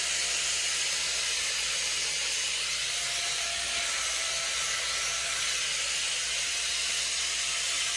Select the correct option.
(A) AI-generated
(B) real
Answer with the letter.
B